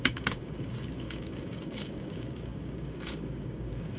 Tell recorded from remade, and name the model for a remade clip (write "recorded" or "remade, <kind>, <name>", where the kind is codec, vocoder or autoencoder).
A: remade, codec, DAC